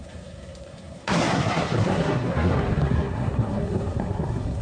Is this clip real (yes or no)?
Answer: no